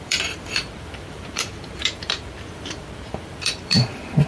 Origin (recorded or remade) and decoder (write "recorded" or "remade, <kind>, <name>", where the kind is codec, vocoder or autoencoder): remade, vocoder, BigVGAN v2